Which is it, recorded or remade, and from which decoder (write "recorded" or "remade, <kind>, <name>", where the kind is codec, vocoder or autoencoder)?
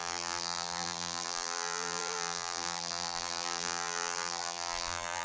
remade, vocoder, BigVGAN v2